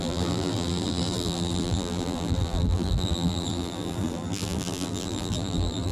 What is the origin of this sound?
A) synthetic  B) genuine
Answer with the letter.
A